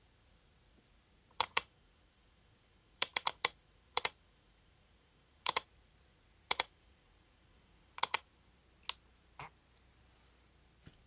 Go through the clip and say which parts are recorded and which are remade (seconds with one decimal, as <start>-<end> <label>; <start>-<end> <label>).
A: 0.0-8.6 remade; 8.6-11.1 recorded